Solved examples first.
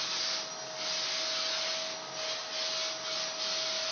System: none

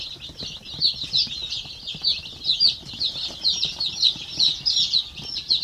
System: none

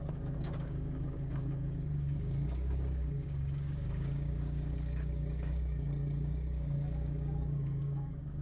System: codec, DAC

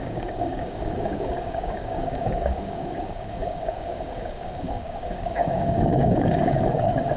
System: codec, DAC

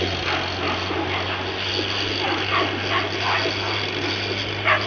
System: none